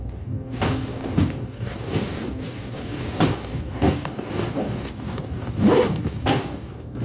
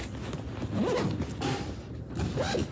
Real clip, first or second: second